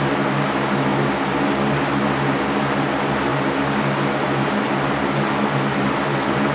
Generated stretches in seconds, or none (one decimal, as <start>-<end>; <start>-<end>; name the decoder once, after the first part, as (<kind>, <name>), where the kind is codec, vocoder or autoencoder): none